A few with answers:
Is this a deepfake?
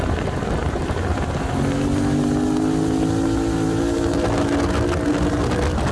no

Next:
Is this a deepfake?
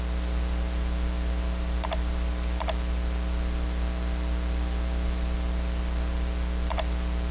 no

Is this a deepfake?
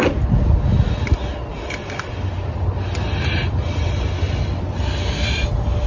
no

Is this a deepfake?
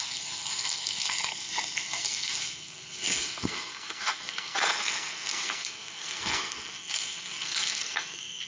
yes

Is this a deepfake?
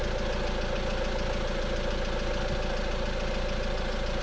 no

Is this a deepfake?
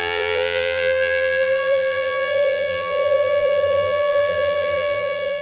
yes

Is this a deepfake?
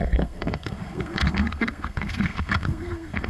yes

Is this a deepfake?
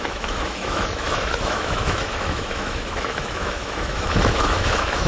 yes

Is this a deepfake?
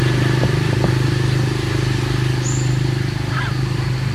no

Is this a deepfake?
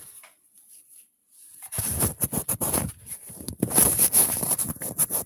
yes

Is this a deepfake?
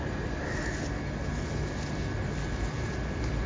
no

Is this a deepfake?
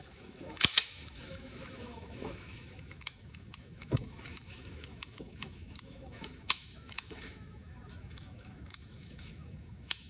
yes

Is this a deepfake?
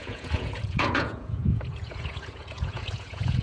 yes